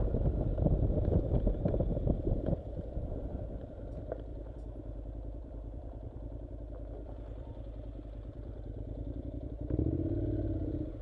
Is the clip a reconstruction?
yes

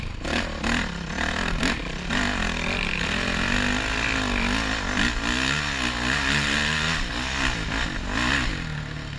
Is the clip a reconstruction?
no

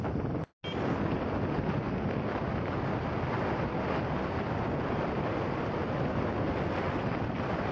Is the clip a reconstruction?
no